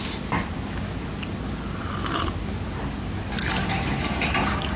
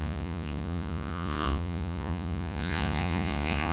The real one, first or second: first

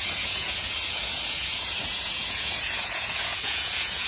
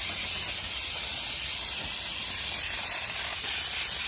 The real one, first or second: second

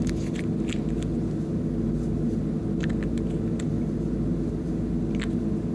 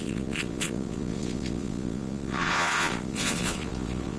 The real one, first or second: first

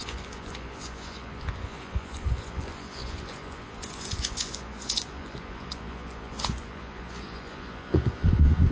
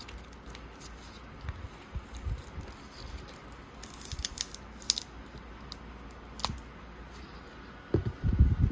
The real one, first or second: second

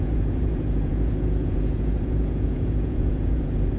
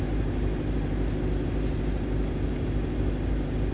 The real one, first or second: second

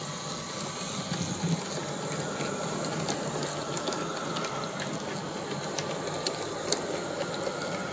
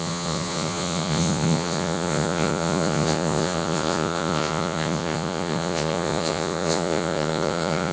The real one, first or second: first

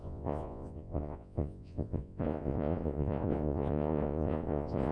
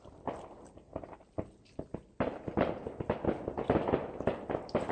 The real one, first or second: second